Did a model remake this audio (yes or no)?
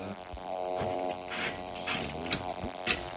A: yes